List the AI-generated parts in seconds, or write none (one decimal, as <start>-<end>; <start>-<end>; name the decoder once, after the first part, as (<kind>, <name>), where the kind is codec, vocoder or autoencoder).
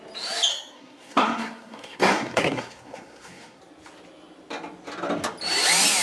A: 0.5-3.6 (codec, SNAC)